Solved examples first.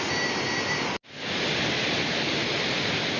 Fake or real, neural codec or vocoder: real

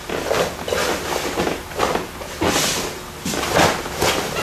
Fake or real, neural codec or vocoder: real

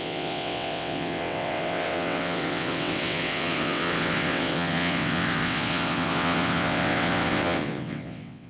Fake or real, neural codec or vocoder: fake, vocoder, WaveNeXt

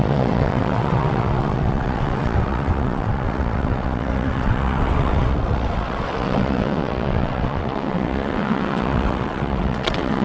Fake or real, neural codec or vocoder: fake, vocoder, WaveNeXt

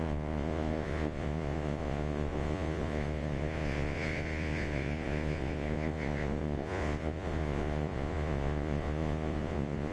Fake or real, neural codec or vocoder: fake, vocoder, Vocos